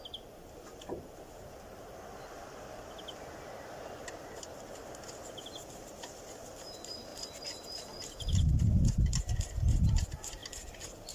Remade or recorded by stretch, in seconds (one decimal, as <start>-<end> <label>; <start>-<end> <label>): 0.0-11.1 recorded